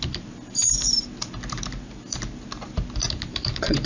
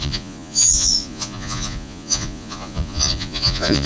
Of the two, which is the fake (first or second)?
second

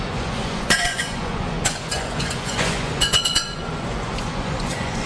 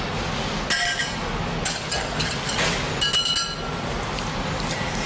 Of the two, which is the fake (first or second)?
first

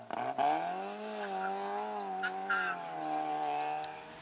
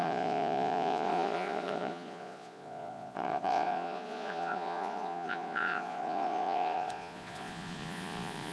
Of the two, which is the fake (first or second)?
second